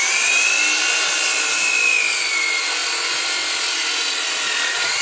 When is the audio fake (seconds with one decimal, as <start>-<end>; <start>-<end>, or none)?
none